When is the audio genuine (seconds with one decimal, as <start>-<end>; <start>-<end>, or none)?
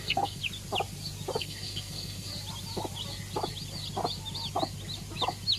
0.4-1.4; 2.3-5.6